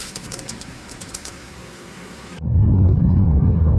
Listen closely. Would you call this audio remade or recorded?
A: remade